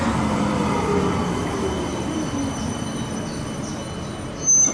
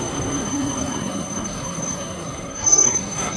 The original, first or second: first